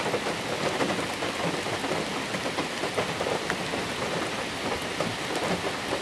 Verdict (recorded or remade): recorded